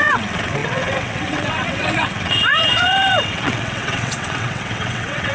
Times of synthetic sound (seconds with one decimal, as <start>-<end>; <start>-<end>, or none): 0.0-5.3